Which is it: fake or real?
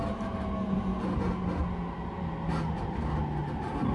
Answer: real